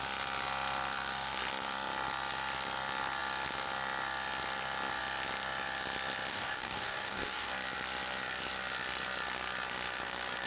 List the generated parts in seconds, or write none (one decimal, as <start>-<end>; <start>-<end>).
6.3-7.5